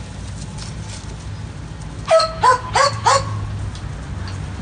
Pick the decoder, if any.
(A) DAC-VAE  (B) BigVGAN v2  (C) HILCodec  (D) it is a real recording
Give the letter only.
D